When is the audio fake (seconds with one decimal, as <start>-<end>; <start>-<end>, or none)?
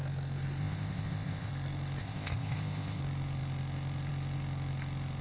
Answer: 0.6-1.5; 2.0-3.0